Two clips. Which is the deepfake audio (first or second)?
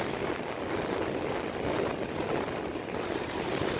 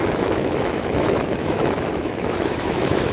second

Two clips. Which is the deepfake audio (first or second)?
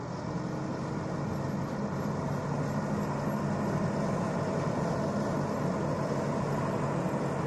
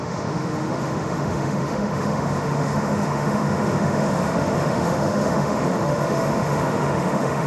second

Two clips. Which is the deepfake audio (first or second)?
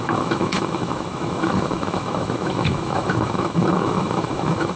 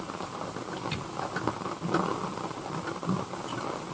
first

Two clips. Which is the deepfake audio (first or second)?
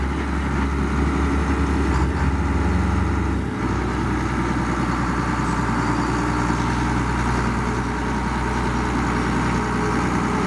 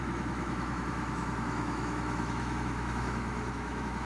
second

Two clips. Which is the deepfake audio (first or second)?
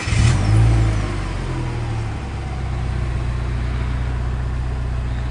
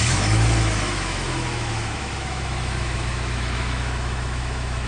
second